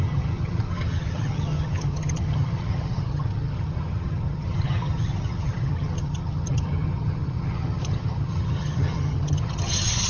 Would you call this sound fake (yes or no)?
yes